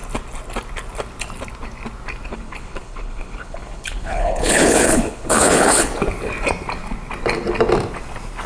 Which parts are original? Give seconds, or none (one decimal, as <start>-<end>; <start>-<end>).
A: 0.0-2.3; 5.9-8.5